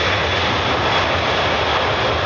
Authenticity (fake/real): real